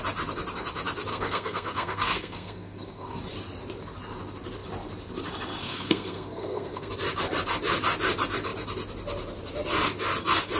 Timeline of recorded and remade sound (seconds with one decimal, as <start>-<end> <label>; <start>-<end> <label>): 0.0-1.1 recorded; 1.1-3.2 remade; 3.2-5.6 recorded; 5.6-6.9 remade; 6.9-10.6 recorded

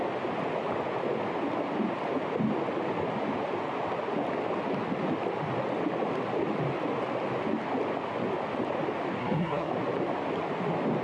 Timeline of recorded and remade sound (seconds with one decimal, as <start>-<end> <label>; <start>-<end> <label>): 0.0-9.2 recorded; 9.2-9.7 remade; 9.7-11.0 recorded

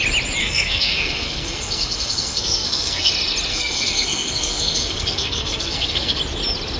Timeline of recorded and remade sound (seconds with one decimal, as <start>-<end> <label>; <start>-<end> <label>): 0.0-0.4 recorded; 0.4-3.1 remade; 3.1-3.5 recorded; 3.5-6.2 remade; 6.2-6.8 recorded

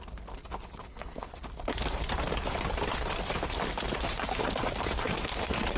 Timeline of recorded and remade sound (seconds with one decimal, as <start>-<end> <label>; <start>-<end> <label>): 0.0-0.9 recorded; 0.9-1.4 remade; 1.4-5.8 recorded

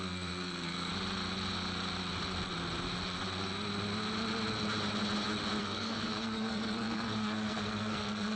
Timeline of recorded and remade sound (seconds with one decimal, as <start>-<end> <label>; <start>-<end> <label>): 0.0-0.9 remade; 0.9-5.6 recorded; 5.6-8.4 remade

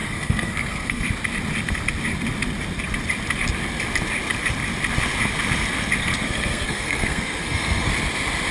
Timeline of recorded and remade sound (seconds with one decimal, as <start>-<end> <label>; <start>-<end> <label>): 0.0-1.1 remade; 1.1-6.0 recorded; 6.0-7.9 remade; 7.9-8.5 recorded

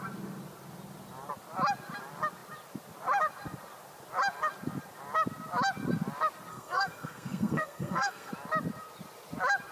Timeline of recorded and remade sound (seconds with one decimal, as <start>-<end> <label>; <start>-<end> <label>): 0.0-6.5 recorded; 6.5-8.3 remade; 8.3-9.7 recorded

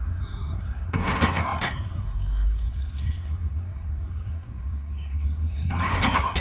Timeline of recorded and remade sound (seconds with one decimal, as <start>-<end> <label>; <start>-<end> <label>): 0.0-6.4 remade